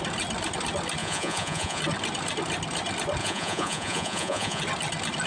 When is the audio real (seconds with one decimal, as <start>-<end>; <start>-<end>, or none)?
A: 0.0-1.0; 1.8-3.2; 4.6-5.3